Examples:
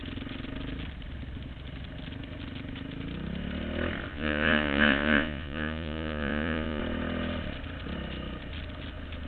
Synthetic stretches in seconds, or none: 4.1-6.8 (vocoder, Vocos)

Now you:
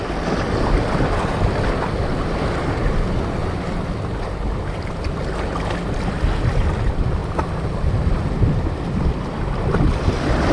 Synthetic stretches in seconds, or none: none